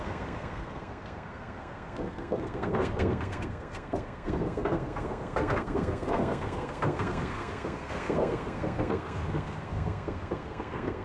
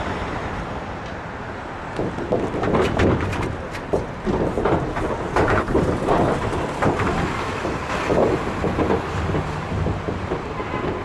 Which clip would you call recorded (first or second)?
second